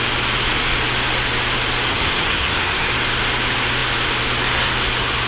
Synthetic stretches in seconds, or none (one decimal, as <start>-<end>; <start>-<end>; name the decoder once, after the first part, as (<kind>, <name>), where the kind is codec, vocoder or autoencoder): 1.9-2.9 (codec, SNAC)